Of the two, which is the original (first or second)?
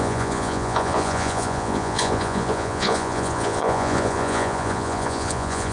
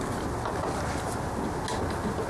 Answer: second